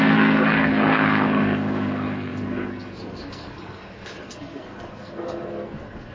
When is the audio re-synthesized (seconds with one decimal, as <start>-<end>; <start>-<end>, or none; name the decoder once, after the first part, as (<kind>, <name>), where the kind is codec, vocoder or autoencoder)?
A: 0.0-6.1 (codec, SNAC)

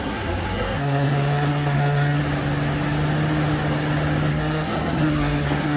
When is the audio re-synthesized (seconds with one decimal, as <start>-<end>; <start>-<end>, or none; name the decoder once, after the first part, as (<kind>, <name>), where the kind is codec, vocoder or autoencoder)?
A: 0.0-2.2 (codec, SNAC); 4.3-5.8

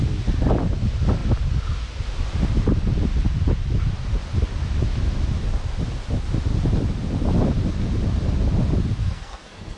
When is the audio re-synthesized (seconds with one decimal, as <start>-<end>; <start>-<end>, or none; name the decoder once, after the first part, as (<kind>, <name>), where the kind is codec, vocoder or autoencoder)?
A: 9.0-9.8 (codec, SNAC)

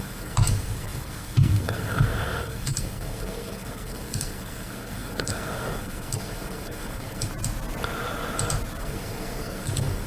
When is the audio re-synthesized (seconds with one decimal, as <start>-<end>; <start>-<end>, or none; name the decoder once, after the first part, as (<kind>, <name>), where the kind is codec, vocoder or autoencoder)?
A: 0.0-7.3 (codec, SNAC); 8.8-10.1

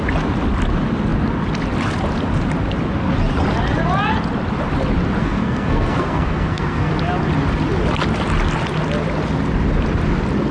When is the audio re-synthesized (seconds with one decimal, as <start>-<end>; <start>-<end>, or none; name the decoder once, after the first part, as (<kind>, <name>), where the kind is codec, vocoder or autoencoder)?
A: 5.2-6.9 (codec, SNAC)